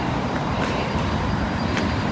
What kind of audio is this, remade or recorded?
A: remade